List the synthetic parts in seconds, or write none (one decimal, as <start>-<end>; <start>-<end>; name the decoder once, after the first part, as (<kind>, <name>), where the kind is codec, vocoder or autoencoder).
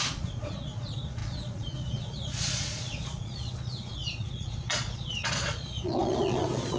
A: 0.0-6.8 (vocoder, Vocos)